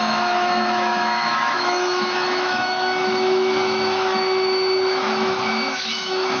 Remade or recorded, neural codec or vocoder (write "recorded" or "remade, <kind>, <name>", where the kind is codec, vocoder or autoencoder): remade, autoencoder, DAC-VAE